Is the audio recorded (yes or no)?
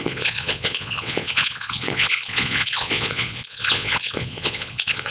no